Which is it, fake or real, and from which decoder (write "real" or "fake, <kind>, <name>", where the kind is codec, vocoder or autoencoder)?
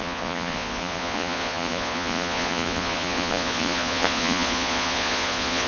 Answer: fake, vocoder, Vocos